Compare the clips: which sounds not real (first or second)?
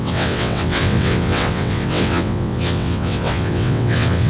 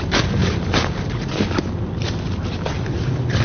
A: first